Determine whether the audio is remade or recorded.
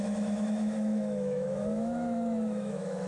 remade